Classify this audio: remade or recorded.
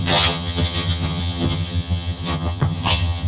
remade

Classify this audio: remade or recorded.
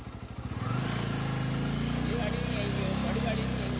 recorded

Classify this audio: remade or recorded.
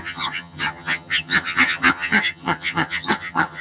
remade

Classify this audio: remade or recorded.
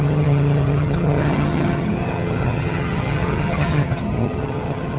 remade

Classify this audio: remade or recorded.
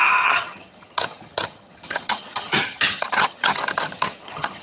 remade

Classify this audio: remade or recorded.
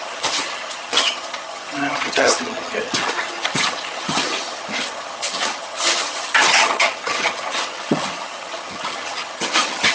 remade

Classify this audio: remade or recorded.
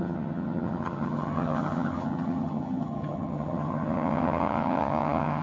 remade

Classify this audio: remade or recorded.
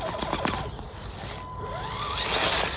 recorded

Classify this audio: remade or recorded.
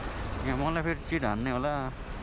recorded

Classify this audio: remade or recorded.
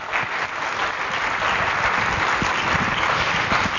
recorded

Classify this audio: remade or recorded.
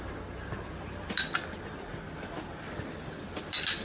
recorded